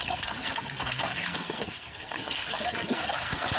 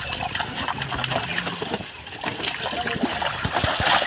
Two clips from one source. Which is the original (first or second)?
second